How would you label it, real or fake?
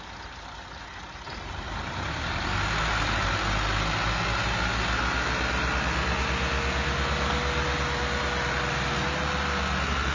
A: real